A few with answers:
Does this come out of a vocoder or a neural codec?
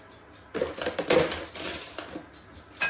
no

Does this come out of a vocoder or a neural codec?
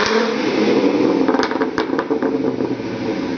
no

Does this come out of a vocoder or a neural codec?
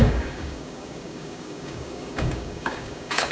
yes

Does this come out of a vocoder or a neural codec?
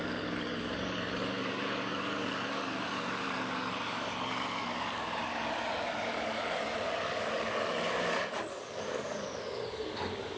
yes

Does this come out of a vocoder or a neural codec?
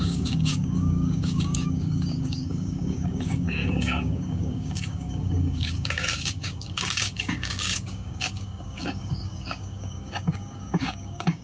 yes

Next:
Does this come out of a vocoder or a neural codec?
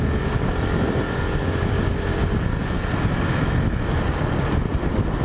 no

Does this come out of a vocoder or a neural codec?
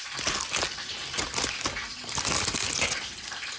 no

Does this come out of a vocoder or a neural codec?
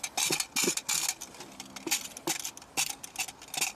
no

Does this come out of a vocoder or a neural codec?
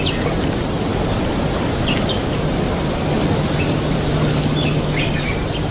no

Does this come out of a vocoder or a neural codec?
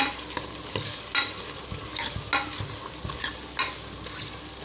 no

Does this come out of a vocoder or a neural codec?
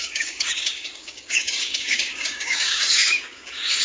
yes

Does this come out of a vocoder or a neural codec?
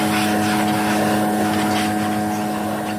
no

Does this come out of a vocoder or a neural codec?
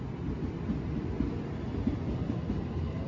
no